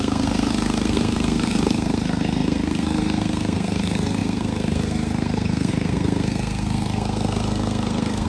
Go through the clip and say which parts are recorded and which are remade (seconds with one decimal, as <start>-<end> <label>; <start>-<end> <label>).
0.0-8.3 remade